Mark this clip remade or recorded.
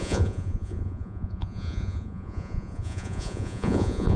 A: remade